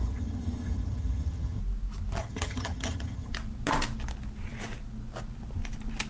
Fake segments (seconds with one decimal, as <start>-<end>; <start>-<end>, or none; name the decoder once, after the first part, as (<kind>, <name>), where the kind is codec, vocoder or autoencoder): 0.0-1.6 (vocoder, HiFi-GAN); 2.2-3.3